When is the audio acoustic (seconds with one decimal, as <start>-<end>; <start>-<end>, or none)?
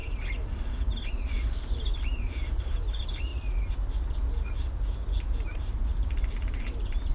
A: 0.0-1.1; 3.3-5.9